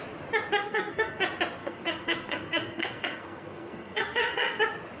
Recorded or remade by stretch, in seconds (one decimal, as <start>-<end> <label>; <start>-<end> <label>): 0.0-0.6 recorded; 0.6-1.2 remade; 1.2-1.6 recorded; 1.6-4.6 remade; 4.6-5.0 recorded